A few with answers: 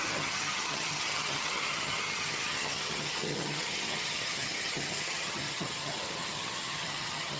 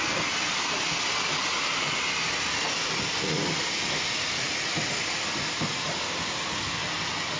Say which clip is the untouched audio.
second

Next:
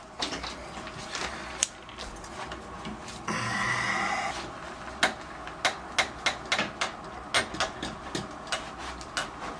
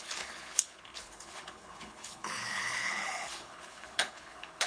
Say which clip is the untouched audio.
first